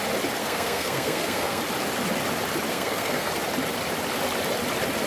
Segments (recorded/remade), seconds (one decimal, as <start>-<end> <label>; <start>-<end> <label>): 0.0-0.4 recorded; 0.4-1.6 remade; 1.6-2.7 recorded; 2.7-3.3 remade; 3.3-5.1 recorded